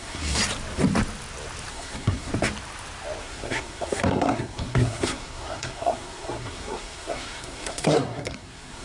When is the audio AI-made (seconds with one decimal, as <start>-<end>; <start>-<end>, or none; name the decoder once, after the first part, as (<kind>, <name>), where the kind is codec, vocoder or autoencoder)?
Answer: 0.0-0.4 (codec, SNAC); 1.7-2.3; 3.2-8.8